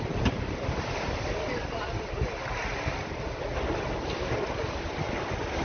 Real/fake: real